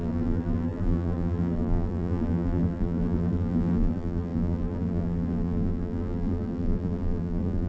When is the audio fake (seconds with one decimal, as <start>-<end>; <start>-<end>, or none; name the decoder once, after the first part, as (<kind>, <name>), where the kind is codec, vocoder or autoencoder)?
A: 0.0-7.7 (vocoder, BigVGAN v2)